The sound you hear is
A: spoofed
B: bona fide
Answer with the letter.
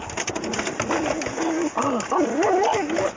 B